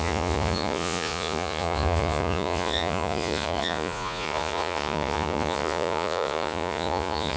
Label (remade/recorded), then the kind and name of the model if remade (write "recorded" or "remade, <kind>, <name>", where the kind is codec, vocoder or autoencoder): remade, vocoder, Vocos